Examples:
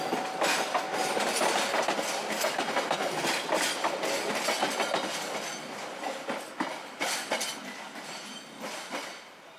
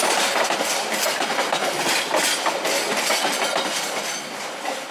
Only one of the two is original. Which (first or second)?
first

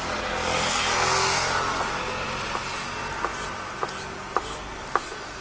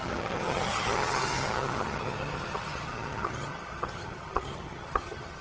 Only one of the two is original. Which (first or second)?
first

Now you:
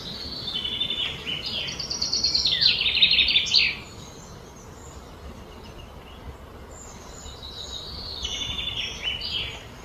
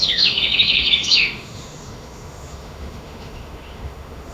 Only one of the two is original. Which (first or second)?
first